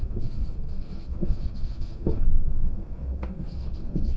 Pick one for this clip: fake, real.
fake